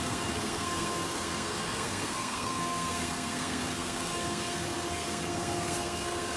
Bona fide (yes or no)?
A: no